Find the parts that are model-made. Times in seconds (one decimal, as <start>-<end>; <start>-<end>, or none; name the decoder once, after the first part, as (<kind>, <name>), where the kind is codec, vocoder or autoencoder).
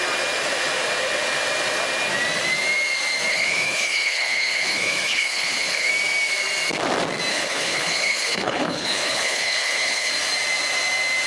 3.3-5.9 (codec, HILCodec); 7.3-10.1